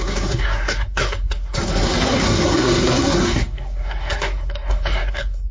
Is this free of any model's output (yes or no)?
no